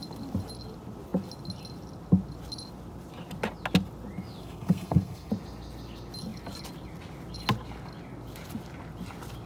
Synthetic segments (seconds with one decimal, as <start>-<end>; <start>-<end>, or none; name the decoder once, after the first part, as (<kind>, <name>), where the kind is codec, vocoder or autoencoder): 4.4-5.3 (codec, SNAC)